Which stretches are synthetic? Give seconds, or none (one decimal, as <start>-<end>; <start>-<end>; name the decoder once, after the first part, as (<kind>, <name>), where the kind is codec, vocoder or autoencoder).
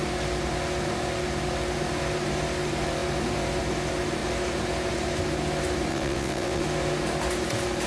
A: 5.9-6.6 (vocoder, WaveNeXt)